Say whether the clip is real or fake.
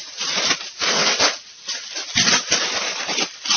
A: real